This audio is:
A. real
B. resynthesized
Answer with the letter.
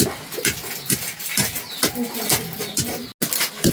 A